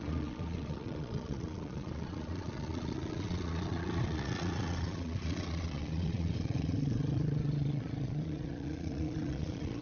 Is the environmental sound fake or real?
fake